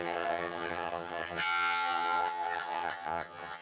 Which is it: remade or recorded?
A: remade